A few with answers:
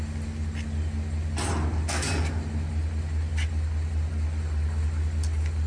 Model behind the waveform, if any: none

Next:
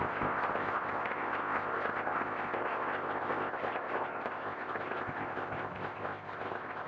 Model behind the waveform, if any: codec, ZipCodec